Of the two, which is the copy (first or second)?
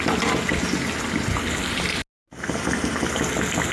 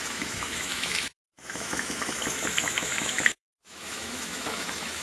second